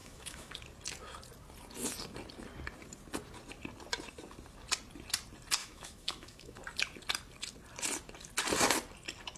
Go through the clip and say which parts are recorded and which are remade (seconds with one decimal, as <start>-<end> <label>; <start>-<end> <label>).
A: 0.0-0.5 remade; 0.5-5.6 recorded; 5.6-6.6 remade; 6.6-9.4 recorded